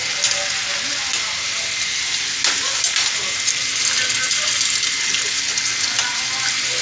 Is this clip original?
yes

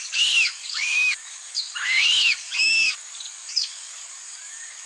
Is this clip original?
no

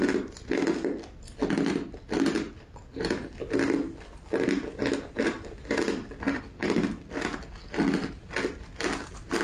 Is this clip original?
yes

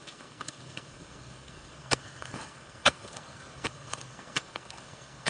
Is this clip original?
no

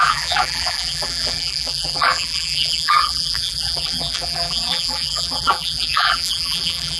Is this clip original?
no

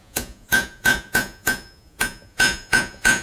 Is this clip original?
no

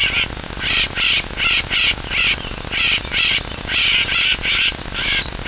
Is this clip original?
no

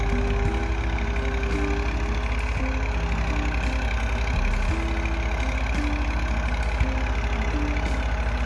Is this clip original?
yes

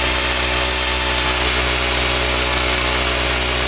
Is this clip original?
yes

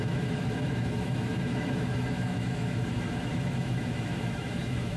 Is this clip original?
no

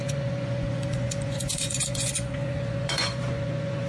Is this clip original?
no